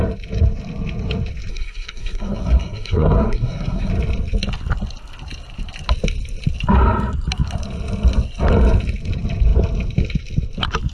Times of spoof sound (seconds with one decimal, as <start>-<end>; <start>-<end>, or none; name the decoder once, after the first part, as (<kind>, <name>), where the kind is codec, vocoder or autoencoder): 1.5-3.9 (codec, SNAC)